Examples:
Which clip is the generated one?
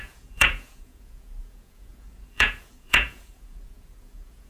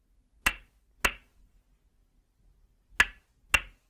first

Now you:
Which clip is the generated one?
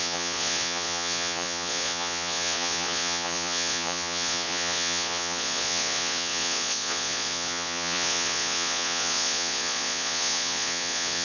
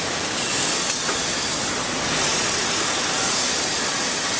first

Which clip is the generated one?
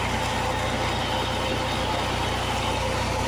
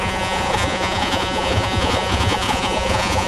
second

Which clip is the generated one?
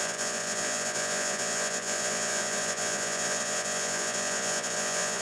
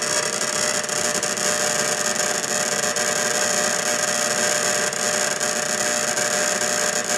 first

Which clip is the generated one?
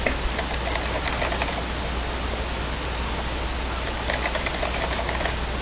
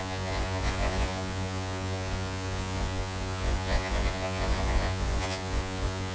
second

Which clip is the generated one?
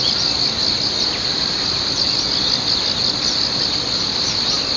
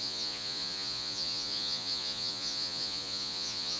second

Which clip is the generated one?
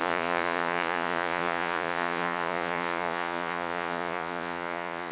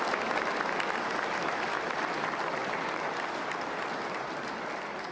first